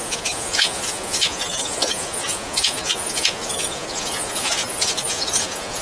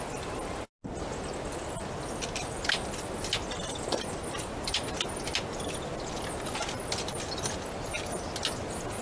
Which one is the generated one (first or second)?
first